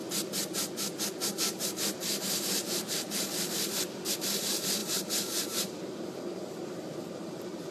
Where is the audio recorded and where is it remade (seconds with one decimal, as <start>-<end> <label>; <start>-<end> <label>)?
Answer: 0.0-1.3 recorded; 1.3-7.7 remade